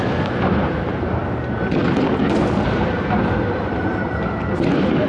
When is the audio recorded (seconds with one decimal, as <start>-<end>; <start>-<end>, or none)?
0.0-5.1